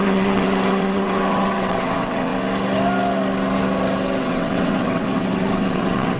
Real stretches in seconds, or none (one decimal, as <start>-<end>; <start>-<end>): 2.3-4.2